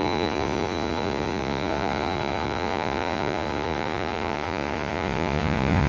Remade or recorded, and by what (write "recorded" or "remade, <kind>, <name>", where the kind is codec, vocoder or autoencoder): remade, vocoder, Vocos